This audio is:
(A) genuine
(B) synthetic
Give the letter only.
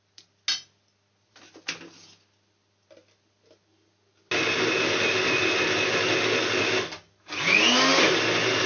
A